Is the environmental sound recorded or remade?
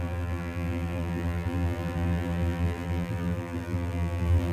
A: remade